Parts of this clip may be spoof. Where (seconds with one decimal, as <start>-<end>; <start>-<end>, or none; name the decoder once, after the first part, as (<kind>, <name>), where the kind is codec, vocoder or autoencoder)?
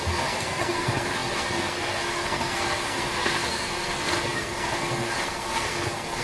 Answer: 0.0-6.2 (codec, SNAC)